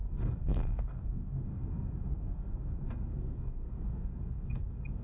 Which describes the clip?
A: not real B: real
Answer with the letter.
A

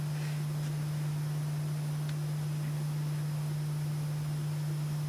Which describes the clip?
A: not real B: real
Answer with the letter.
B